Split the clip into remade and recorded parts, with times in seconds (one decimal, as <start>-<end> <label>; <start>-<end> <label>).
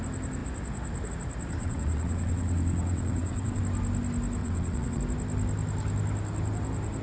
0.0-1.6 recorded; 1.6-3.6 remade; 3.6-4.4 recorded; 4.4-5.0 remade; 5.0-7.0 recorded